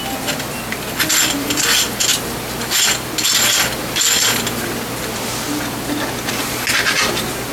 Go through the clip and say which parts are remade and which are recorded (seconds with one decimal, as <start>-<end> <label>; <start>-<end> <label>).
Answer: 0.0-7.5 recorded